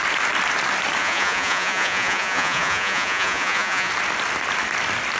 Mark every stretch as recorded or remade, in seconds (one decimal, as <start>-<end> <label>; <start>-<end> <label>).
0.0-1.0 recorded; 1.0-3.9 remade; 3.9-5.2 recorded